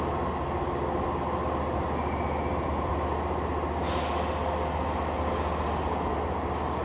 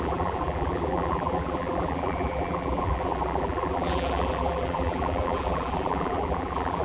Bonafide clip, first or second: first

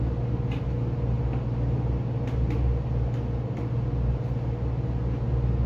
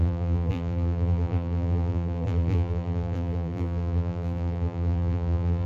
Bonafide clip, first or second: first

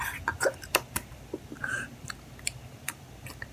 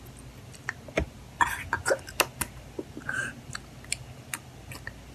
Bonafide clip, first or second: second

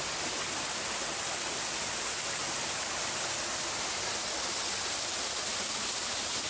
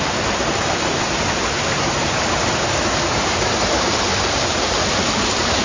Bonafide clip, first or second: first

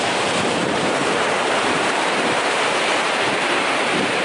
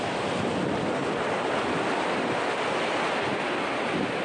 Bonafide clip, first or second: second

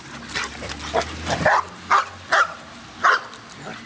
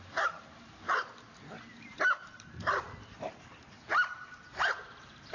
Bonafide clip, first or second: first